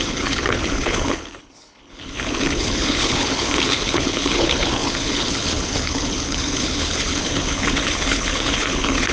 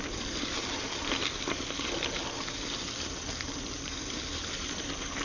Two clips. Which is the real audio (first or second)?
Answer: second